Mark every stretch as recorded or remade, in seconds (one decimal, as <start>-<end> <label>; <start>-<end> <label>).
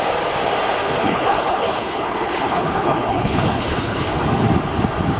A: 0.0-1.0 recorded; 1.0-4.1 remade; 4.1-5.2 recorded